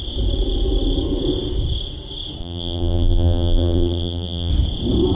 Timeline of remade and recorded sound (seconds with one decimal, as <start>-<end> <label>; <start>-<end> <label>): 0.0-2.4 recorded; 2.4-4.5 remade; 4.5-5.1 recorded